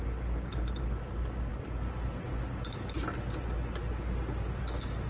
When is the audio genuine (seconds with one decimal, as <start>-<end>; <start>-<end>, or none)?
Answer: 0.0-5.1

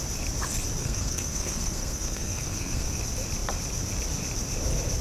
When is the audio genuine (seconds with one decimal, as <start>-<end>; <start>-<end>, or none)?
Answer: 0.0-0.8; 3.0-5.0

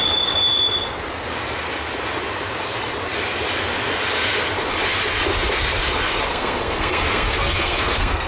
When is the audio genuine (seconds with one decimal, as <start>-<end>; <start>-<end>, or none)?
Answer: 0.0-6.3

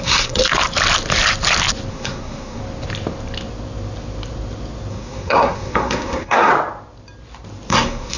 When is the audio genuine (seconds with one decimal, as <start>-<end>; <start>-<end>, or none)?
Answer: 0.4-1.9; 2.6-4.9; 6.5-7.7

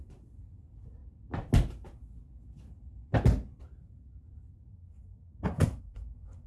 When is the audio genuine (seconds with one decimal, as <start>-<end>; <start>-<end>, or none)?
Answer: 0.0-4.7